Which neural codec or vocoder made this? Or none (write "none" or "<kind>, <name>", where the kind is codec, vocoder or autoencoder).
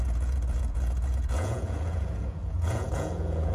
vocoder, Vocos